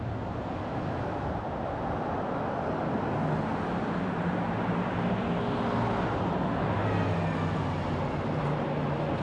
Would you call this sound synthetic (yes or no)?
no